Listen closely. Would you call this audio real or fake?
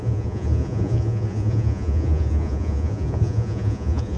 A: fake